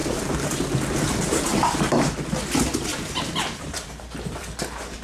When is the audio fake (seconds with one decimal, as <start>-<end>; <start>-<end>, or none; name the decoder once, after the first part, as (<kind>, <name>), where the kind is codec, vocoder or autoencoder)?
0.0-1.0 (vocoder, BigVGAN v2); 1.5-4.5